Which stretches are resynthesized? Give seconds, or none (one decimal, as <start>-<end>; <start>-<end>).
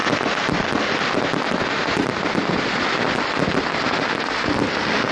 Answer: none